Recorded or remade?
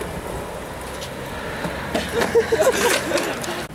recorded